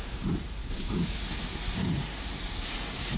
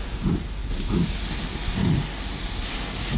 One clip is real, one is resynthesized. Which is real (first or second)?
second